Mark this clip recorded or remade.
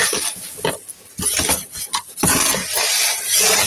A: recorded